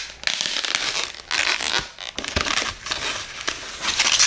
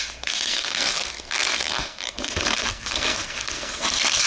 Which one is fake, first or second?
second